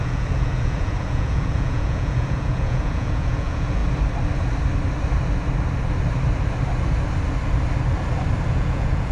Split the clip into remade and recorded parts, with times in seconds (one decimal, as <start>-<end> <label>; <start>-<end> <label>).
0.0-3.8 remade; 3.8-8.5 recorded; 8.5-9.1 remade